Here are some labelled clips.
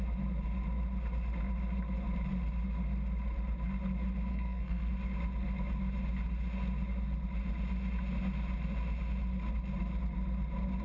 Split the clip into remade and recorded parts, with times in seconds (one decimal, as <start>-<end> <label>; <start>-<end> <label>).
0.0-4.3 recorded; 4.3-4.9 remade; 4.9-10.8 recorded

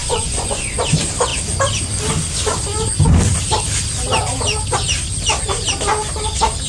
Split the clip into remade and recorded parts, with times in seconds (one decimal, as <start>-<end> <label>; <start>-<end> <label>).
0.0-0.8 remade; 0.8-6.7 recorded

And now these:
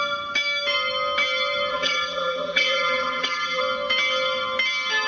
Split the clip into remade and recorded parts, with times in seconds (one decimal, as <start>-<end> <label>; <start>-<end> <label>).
0.0-1.7 recorded; 1.7-3.6 remade; 3.6-5.1 recorded

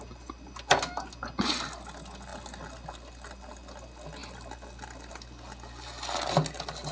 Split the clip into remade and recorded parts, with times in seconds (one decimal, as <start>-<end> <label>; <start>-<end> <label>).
0.0-6.9 recorded

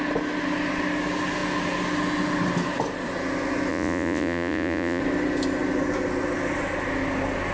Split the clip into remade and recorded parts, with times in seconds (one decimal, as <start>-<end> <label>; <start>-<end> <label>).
0.0-3.7 recorded; 3.7-5.0 remade; 5.0-7.5 recorded